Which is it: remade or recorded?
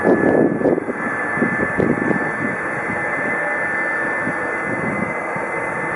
recorded